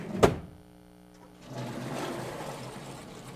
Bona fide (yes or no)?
yes